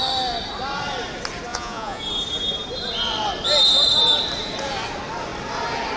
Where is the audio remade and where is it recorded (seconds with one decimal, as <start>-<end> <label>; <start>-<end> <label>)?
0.0-1.5 recorded; 1.5-2.0 remade; 2.0-6.0 recorded